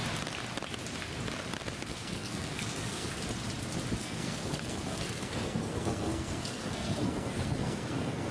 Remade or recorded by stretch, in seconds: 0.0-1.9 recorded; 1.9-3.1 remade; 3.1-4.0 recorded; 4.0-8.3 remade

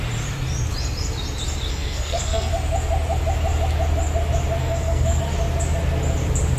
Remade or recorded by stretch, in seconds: 0.0-1.7 recorded; 1.7-2.5 remade; 2.5-4.6 recorded; 4.6-5.2 remade; 5.2-6.6 recorded

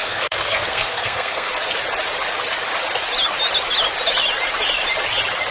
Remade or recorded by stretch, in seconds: 0.0-1.5 remade; 1.5-5.5 recorded